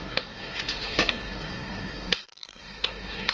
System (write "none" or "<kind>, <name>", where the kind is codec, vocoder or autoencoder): codec, SNAC